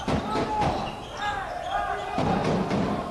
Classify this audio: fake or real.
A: real